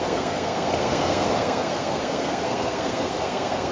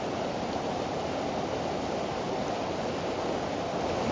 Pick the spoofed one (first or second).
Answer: first